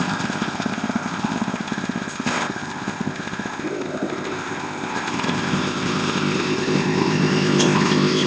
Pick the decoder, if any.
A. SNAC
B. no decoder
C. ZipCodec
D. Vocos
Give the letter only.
C